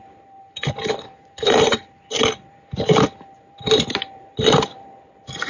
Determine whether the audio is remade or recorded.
remade